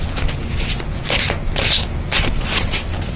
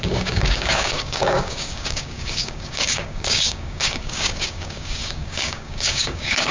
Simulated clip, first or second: second